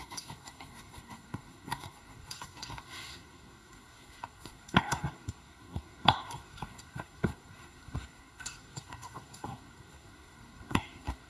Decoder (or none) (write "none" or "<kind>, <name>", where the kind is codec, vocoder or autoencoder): codec, SNAC